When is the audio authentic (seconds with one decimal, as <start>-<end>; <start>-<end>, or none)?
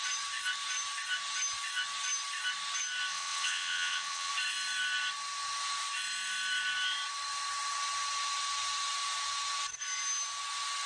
0.0-3.1; 4.3-10.9